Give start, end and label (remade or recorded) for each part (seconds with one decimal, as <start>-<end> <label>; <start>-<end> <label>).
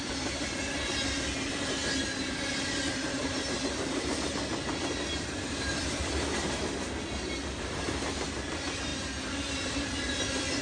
0.0-10.6 recorded